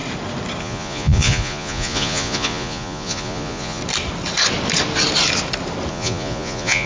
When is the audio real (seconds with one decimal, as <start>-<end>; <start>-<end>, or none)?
0.0-0.6; 3.8-5.9